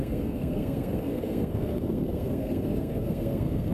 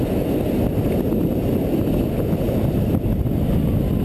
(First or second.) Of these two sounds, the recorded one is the second